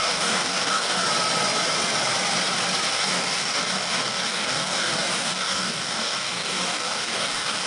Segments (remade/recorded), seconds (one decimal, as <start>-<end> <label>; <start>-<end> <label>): 0.0-1.0 remade; 1.0-2.9 recorded; 2.9-7.7 remade